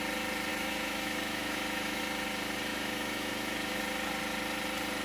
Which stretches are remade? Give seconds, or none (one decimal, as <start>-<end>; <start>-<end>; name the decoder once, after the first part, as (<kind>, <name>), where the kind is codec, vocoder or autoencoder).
0.5-2.0 (autoencoder, DAC-VAE); 2.7-3.8